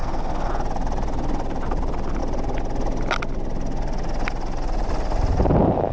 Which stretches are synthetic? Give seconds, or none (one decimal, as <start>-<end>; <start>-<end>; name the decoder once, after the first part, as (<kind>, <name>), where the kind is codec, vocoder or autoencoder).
0.0-0.5 (codec, SNAC)